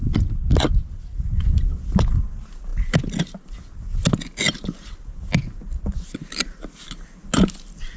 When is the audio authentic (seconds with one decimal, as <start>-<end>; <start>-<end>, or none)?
0.0-8.0

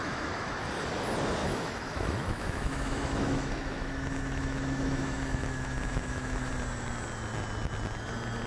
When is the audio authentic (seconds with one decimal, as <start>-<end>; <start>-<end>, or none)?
0.6-1.4; 6.5-8.5